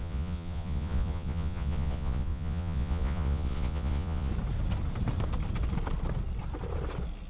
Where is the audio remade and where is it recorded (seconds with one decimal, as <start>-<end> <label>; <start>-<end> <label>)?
0.0-4.3 remade; 4.3-7.3 recorded